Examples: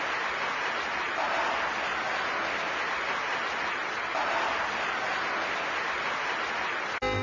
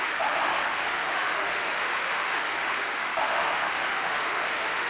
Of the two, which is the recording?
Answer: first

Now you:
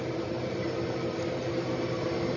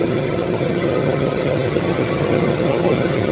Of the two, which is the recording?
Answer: first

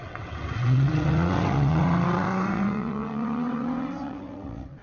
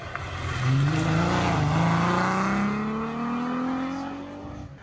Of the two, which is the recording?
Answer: second